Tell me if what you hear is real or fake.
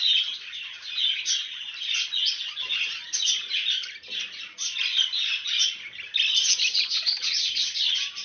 real